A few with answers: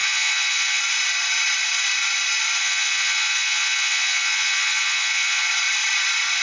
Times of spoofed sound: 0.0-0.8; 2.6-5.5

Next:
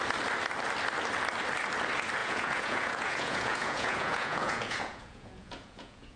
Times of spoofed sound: 2.2-6.2